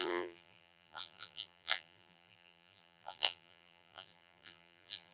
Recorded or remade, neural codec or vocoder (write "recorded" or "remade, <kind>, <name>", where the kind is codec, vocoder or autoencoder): remade, vocoder, BigVGAN v2